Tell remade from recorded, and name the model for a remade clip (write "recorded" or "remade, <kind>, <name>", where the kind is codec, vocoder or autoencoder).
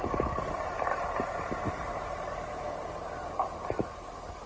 recorded